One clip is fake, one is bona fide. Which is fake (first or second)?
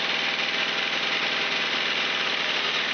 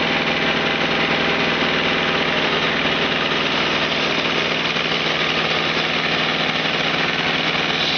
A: first